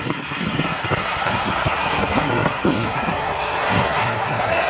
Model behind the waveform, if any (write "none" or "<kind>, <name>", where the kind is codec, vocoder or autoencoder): codec, SNAC